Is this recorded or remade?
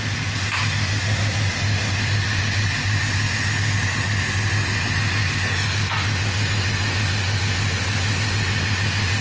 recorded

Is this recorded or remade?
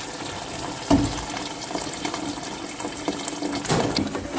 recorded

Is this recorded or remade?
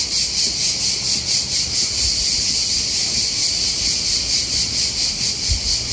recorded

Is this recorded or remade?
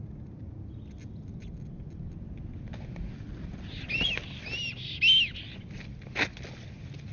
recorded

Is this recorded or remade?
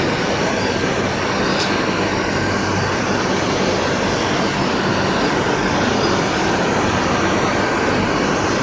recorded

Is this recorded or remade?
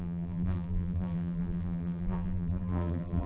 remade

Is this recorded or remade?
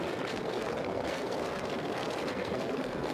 remade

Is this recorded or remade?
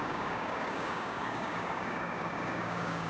remade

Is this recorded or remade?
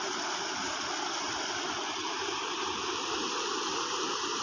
remade